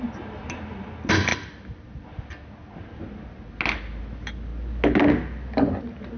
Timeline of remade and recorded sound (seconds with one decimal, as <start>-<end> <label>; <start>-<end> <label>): 0.0-6.2 recorded